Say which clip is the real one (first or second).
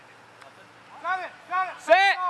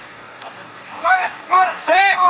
first